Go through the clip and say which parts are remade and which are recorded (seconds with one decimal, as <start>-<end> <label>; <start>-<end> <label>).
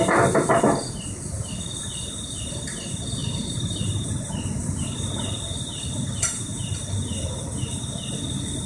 0.0-3.2 recorded; 3.2-4.3 remade; 4.3-6.5 recorded; 6.5-7.9 remade; 7.9-8.7 recorded